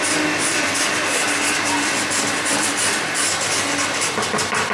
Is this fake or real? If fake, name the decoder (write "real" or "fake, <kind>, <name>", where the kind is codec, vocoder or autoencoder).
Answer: real